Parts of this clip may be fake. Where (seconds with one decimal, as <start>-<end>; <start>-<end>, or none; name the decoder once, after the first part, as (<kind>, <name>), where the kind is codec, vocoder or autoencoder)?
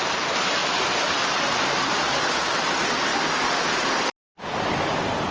0.6-1.3 (vocoder, BigVGAN v2)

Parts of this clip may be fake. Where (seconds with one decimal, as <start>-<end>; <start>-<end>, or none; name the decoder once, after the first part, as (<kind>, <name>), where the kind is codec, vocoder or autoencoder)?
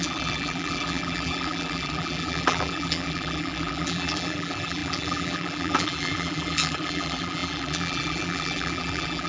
0.0-9.3 (vocoder, BigVGAN v2)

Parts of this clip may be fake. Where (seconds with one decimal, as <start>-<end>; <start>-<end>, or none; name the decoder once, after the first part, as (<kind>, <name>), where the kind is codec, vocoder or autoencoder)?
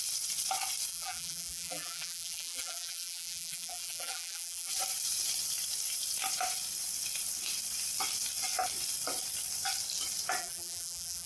0.9-4.7 (vocoder, BigVGAN v2); 10.4-11.3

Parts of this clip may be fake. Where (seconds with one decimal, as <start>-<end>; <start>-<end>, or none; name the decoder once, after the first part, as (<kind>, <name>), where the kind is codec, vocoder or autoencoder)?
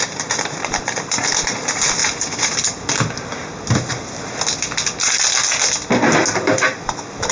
0.0-2.0 (vocoder, BigVGAN v2); 6.4-7.3